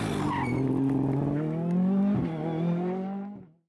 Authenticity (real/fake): real